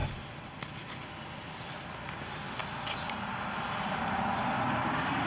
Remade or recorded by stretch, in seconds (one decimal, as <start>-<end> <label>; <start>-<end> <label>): 0.0-5.3 recorded